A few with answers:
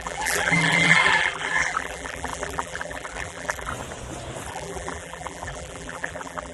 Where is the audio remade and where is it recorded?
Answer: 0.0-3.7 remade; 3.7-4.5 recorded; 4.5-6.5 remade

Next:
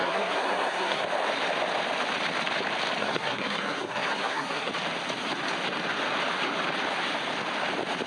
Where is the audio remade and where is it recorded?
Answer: 0.0-1.0 remade; 1.0-3.0 recorded; 3.0-4.7 remade; 4.7-8.1 recorded